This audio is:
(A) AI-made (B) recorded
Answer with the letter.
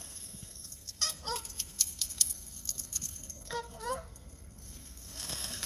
A